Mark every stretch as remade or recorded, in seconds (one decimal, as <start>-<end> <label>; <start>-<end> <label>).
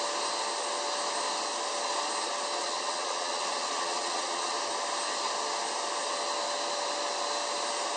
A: 0.0-2.6 recorded; 2.6-4.5 remade; 4.5-8.0 recorded